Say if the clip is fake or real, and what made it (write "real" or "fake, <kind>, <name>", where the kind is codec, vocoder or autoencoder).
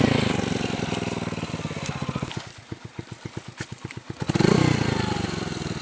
real